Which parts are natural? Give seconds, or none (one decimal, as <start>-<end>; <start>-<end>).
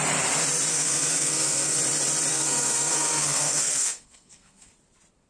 0.0-0.7; 1.8-2.3; 4.7-5.3